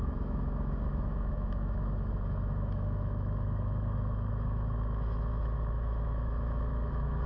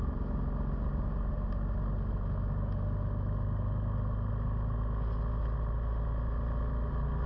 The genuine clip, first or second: second